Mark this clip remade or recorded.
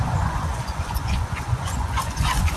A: remade